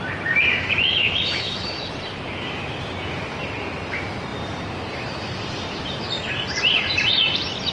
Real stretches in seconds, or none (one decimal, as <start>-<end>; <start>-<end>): 0.0-0.6; 1.7-7.7